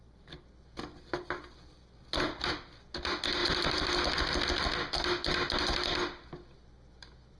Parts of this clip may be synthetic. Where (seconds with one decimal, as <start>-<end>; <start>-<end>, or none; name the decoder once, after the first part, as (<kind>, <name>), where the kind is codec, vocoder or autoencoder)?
3.4-4.0 (vocoder, BigVGAN v2)